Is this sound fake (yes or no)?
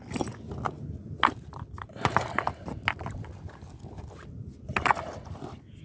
no